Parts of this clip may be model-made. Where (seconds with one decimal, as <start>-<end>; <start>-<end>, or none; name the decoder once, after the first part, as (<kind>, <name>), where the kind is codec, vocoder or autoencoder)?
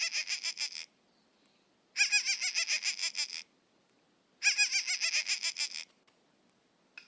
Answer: none